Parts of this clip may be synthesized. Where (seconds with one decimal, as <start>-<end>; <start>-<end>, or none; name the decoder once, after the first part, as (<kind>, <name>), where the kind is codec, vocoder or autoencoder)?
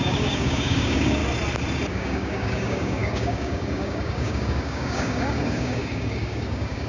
0.0-1.2 (codec, DAC); 1.9-6.9